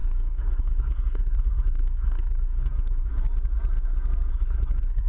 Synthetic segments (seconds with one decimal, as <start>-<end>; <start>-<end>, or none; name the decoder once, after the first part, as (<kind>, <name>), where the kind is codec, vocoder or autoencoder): 0.0-3.1 (codec, SNAC); 4.3-5.1